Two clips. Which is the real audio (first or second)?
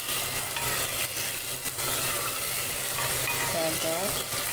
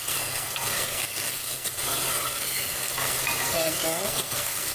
first